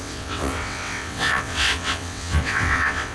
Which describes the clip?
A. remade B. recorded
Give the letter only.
A